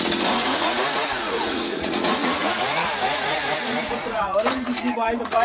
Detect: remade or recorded remade